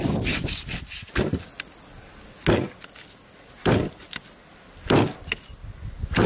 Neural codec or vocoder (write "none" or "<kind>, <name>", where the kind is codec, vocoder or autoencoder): none